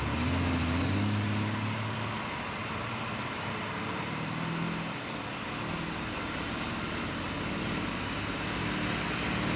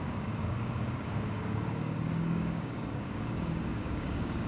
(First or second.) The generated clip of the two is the second